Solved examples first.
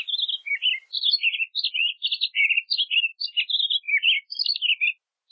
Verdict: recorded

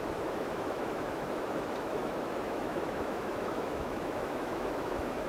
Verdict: remade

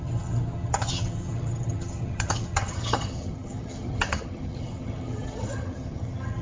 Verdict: remade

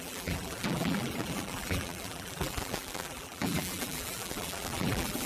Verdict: remade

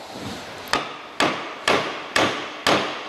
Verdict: recorded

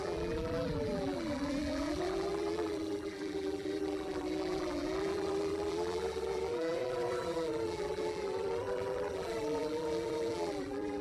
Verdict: remade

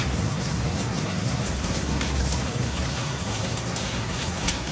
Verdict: remade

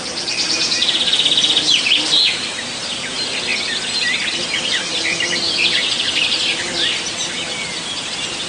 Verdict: recorded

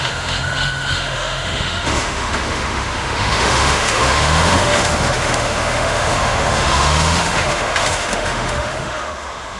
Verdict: remade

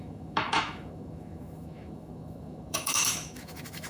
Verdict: remade